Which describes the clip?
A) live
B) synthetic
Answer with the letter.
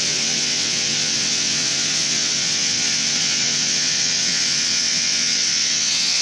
B